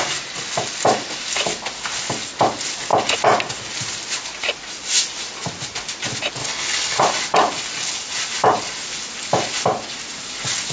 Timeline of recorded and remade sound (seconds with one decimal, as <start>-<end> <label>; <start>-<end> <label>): 0.0-6.4 recorded; 6.4-7.0 remade; 7.0-10.7 recorded